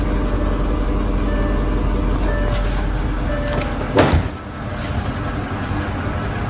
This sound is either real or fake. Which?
real